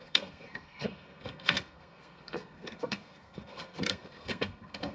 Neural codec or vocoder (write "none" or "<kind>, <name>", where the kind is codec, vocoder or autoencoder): codec, SNAC